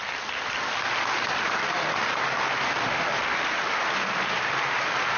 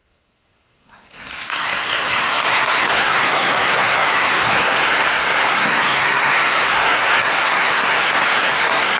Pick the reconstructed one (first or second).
second